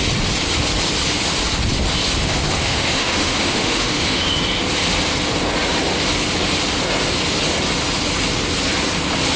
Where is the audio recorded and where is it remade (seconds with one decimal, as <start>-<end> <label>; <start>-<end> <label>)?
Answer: 0.0-2.6 recorded; 2.6-4.2 remade; 4.2-9.4 recorded